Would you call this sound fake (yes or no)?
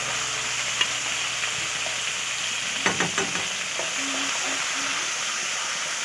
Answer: no